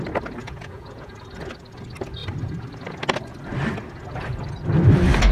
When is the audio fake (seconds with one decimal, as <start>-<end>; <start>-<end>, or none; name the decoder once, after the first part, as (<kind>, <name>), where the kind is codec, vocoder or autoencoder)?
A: 0.4-1.2 (vocoder, Vocos)